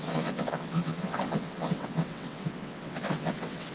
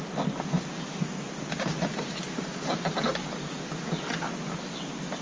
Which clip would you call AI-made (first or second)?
first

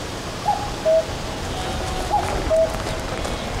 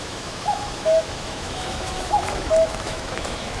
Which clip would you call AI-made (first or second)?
second